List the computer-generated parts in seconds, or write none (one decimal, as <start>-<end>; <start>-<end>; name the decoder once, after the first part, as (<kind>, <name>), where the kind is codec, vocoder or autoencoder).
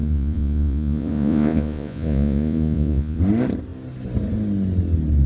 0.0-3.2 (vocoder, Vocos)